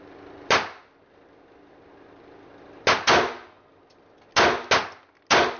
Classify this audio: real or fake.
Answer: real